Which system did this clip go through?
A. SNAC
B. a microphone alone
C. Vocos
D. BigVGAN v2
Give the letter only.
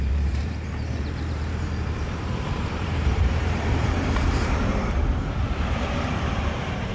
D